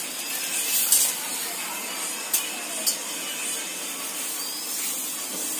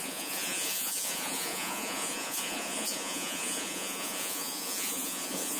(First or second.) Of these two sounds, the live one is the first